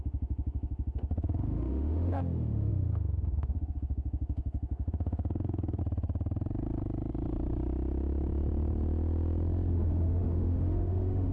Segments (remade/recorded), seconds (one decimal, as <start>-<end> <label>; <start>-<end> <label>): 0.0-5.8 remade; 5.8-9.7 recorded; 9.7-11.3 remade